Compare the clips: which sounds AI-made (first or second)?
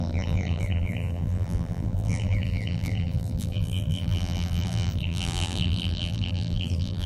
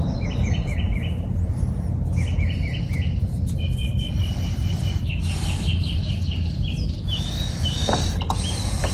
first